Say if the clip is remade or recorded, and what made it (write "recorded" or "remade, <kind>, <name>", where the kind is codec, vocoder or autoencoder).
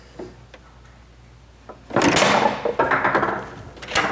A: recorded